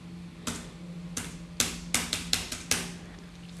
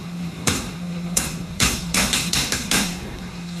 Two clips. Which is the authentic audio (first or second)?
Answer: first